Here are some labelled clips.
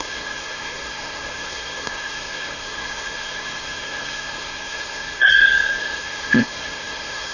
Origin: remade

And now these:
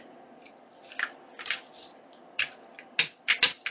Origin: recorded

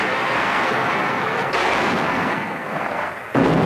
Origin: remade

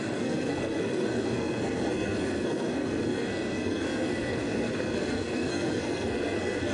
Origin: remade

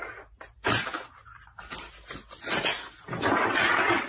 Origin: recorded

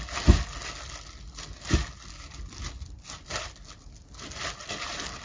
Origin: recorded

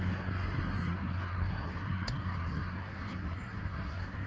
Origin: remade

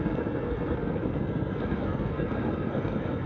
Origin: remade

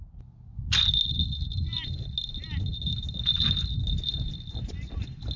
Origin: recorded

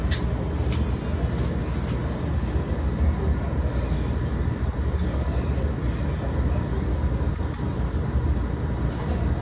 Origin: recorded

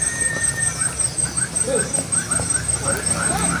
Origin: recorded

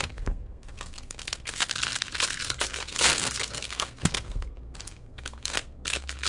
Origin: remade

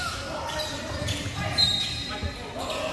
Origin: recorded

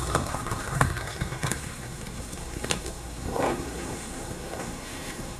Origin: remade